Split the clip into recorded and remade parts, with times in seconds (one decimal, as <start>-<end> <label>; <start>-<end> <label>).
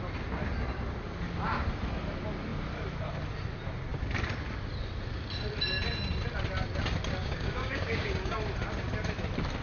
0.0-7.2 recorded; 7.2-8.4 remade; 8.4-9.6 recorded